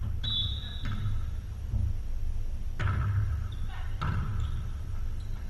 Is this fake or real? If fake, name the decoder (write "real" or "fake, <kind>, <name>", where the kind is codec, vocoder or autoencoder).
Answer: real